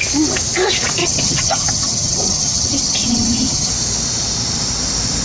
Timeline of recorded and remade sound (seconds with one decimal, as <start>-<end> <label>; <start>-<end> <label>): 0.0-1.0 recorded; 1.0-3.7 remade; 3.7-5.2 recorded